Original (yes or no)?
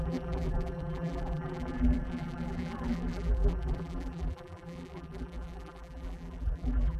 no